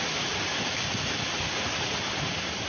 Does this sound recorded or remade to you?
recorded